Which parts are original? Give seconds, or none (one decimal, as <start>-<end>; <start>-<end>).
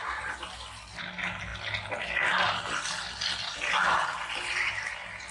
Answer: 0.0-5.3